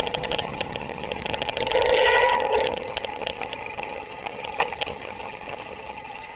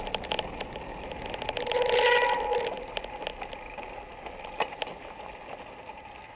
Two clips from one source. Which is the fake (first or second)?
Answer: first